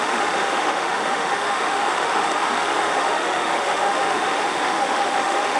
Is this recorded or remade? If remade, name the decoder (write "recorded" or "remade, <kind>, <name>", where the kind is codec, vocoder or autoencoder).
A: remade, autoencoder, DAC-VAE